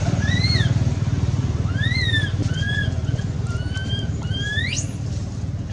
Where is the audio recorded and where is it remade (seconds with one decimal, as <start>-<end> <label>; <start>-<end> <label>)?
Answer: 0.0-2.4 recorded; 2.4-3.4 remade; 3.4-5.7 recorded

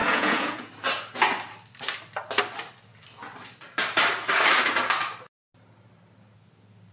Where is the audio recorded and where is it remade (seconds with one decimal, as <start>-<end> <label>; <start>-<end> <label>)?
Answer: 0.0-0.7 remade; 0.7-6.9 recorded